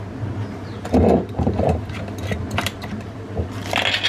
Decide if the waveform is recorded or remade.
recorded